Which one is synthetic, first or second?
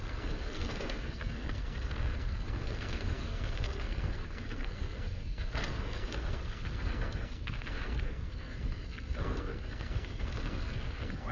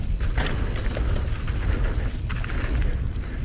first